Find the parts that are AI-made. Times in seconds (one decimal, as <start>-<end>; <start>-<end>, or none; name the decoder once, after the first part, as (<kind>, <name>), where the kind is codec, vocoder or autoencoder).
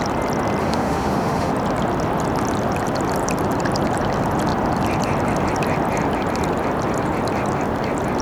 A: 0.6-1.5 (autoencoder, DAC-VAE)